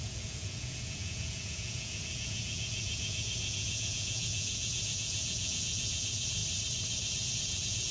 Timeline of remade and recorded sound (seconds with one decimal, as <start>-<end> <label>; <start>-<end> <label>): 0.0-6.4 remade; 6.4-7.3 recorded; 7.3-7.9 remade